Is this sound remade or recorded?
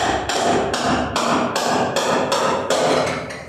remade